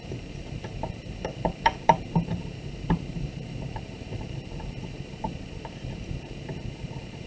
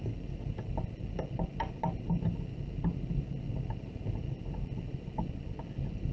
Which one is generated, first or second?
first